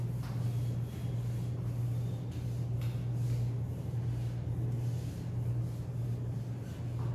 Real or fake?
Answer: real